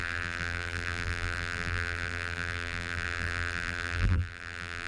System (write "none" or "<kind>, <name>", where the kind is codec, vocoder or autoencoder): vocoder, BigVGAN v2